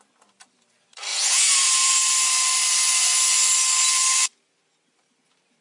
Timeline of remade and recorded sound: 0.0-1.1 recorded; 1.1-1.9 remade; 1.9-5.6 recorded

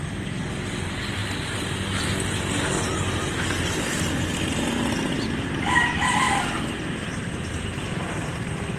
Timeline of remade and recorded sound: 0.0-1.2 remade; 1.2-4.7 recorded; 4.7-8.8 remade

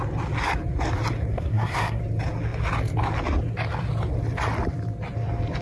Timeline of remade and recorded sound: 0.0-1.3 recorded; 1.3-2.0 remade; 2.0-5.6 recorded

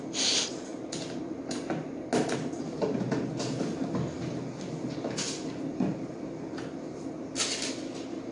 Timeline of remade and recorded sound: 0.0-8.3 recorded

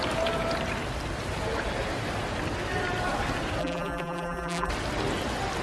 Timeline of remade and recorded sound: 0.0-3.6 recorded; 3.6-4.7 remade; 4.7-5.6 recorded